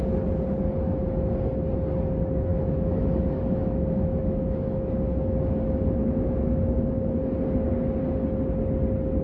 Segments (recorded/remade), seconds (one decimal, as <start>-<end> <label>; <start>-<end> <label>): 0.0-2.5 recorded; 2.5-7.2 remade; 7.2-9.2 recorded